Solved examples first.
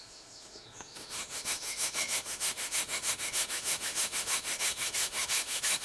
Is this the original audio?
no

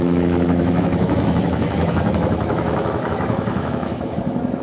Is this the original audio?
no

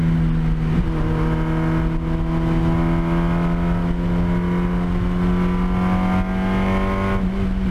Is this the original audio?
yes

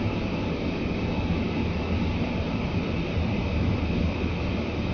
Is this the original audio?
yes